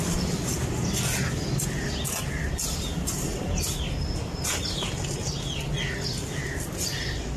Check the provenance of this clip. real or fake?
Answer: real